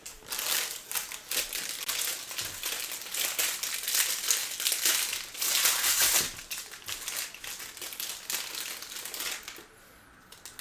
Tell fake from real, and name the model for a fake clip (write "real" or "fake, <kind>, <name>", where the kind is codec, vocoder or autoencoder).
real